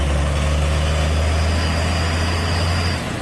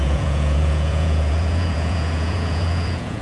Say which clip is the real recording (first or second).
first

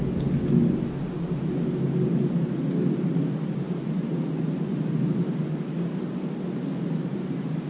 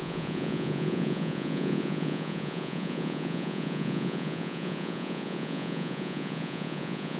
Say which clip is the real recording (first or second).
first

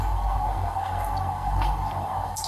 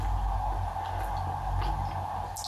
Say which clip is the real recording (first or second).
second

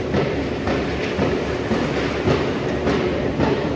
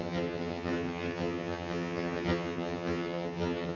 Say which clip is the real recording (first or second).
first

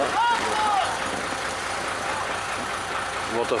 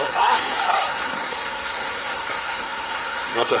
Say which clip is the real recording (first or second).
first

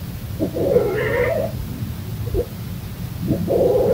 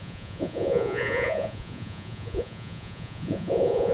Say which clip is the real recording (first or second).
first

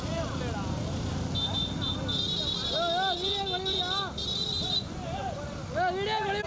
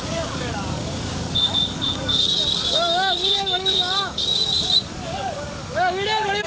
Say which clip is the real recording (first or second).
first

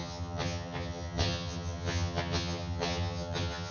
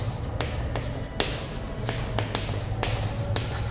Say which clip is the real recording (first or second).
second